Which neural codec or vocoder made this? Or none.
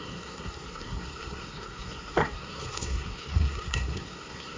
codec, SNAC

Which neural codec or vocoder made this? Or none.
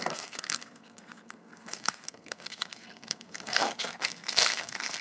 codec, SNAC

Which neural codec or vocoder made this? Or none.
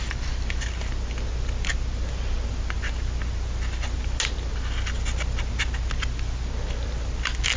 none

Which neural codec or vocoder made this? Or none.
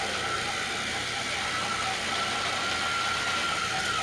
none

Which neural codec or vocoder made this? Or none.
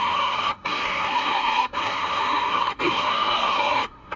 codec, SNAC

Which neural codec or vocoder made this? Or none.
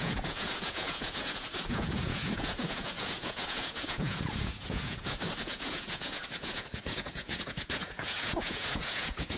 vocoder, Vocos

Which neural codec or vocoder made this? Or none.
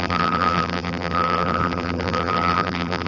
vocoder, BigVGAN v2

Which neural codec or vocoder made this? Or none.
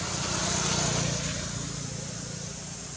none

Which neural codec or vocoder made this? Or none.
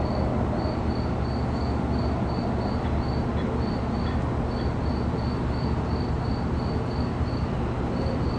none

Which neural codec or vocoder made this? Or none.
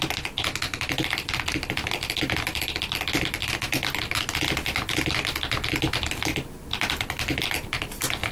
none